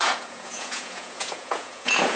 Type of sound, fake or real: fake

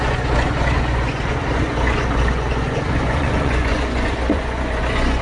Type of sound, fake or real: fake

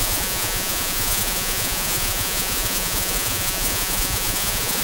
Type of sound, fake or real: fake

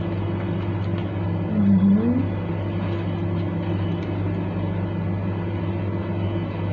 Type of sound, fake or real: real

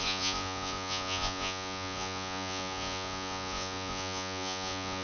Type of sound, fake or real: fake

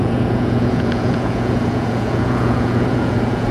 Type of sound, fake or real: fake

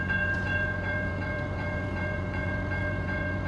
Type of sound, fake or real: fake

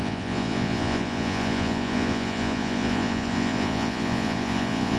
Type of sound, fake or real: fake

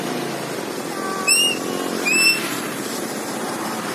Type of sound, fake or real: real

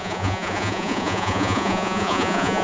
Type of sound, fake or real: fake